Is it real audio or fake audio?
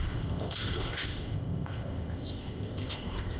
fake